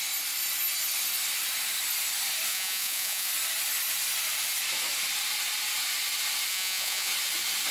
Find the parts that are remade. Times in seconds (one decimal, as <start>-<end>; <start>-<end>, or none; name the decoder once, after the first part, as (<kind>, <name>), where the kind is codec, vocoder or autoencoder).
2.5-3.3 (vocoder, Vocos); 6.5-7.1